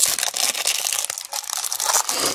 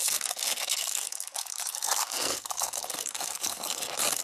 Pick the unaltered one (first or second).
first